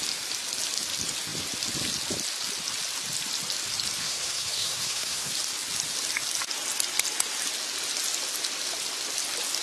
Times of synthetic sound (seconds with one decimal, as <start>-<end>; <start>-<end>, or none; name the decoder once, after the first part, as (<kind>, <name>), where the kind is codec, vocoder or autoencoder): 4.0-5.3 (codec, SNAC)